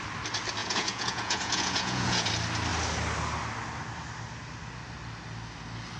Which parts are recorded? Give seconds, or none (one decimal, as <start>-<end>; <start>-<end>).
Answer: 0.0-0.6; 2.3-6.0